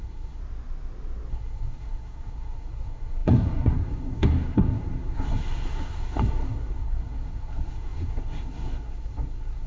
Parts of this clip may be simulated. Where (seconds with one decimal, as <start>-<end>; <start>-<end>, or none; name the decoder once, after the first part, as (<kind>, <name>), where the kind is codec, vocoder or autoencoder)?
0.0-0.4 (codec, SNAC); 1.3-9.7